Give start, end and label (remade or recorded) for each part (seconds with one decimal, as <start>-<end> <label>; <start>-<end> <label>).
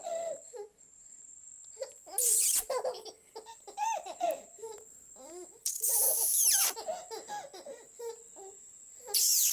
0.0-2.2 recorded; 2.2-2.9 remade; 2.9-3.5 recorded; 3.5-6.1 remade; 6.1-9.5 recorded